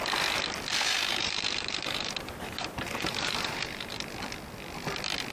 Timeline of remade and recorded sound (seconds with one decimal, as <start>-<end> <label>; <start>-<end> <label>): 0.0-0.7 recorded; 0.7-3.9 remade; 3.9-5.3 recorded